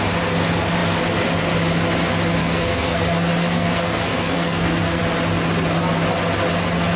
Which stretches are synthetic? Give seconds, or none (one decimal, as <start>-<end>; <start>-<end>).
2.4-5.0